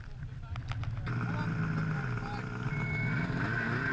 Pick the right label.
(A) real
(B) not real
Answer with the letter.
A